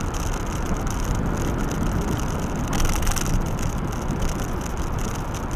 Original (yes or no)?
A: yes